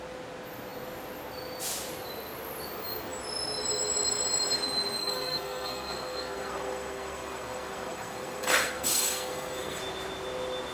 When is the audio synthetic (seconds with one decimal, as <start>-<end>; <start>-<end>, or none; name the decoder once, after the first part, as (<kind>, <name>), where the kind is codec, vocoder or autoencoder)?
5.0-9.8 (codec, SNAC)

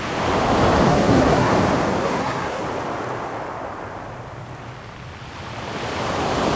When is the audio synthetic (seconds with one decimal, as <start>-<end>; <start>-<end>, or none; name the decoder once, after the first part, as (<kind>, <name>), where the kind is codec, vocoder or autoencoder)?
0.9-1.5 (codec, SNAC); 2.0-2.6

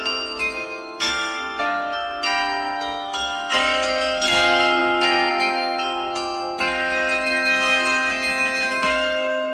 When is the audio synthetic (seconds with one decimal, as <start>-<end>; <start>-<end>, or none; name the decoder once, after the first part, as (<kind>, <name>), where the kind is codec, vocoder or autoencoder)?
0.0-8.1 (codec, SNAC); 8.7-9.5

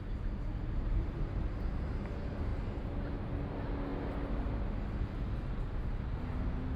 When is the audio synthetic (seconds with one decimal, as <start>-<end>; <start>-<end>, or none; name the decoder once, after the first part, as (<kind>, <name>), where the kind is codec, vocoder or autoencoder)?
0.6-1.4 (vocoder, BigVGAN v2)

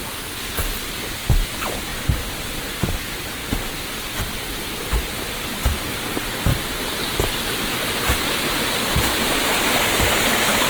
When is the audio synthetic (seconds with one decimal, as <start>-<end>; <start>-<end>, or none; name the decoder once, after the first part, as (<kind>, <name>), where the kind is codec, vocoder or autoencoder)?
1.9-3.0 (vocoder, BigVGAN v2); 3.4-5.1; 6.5-8.9

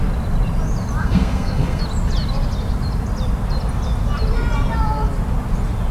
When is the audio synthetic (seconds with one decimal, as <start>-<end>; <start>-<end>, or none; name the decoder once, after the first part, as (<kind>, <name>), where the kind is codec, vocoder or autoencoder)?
1.0-1.8 (codec, SNAC)

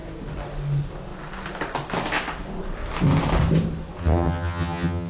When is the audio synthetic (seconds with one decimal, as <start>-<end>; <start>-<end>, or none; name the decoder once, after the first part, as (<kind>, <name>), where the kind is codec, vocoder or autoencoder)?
4.0-5.1 (vocoder, HiFi-GAN)

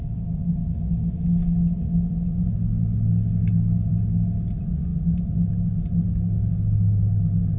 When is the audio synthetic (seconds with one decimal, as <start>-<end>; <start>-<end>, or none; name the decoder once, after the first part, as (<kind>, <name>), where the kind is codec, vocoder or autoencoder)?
none